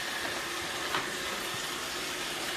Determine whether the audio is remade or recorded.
remade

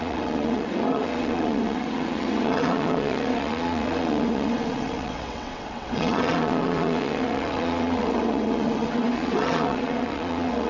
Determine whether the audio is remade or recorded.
remade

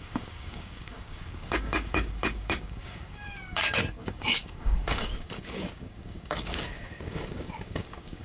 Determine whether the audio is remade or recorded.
remade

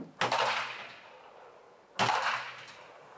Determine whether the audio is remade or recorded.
recorded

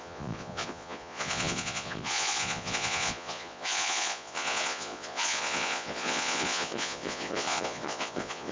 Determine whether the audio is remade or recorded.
remade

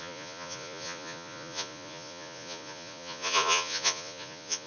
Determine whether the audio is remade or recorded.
remade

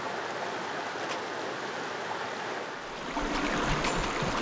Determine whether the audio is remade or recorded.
recorded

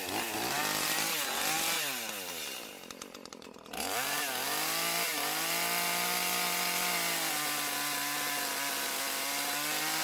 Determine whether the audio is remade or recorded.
recorded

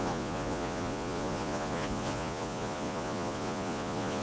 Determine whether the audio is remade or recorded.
remade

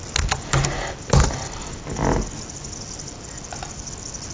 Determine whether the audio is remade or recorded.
recorded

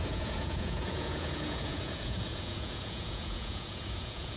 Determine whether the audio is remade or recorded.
remade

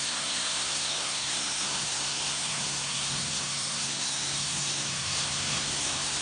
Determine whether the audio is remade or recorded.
remade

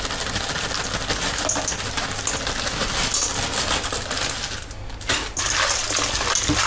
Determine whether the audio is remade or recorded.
recorded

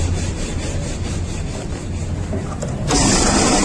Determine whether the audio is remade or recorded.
recorded